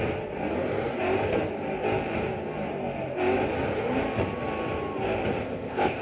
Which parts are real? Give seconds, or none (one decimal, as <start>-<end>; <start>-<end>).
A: 0.0-5.4